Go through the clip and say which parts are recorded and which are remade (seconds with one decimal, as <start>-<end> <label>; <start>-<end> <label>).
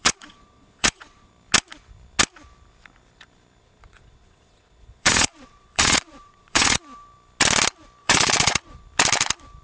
0.0-1.3 remade; 1.3-3.6 recorded; 3.6-6.8 remade; 6.8-8.0 recorded; 8.0-8.8 remade; 8.8-9.6 recorded